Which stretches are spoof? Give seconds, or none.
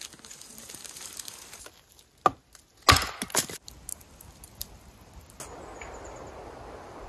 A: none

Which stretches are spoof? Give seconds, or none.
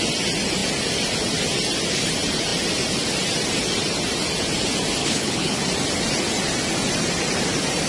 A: 5.0-5.6 (codec, HILCodec)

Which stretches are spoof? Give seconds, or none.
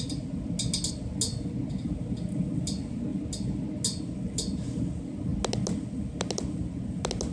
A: none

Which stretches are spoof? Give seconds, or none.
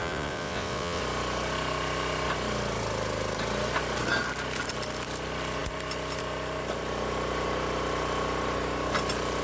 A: 0.0-1.0 (vocoder, WaveNeXt)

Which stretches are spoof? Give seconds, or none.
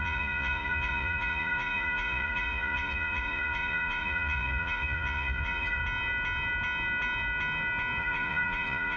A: 0.0-5.8 (vocoder, Vocos); 8.0-9.0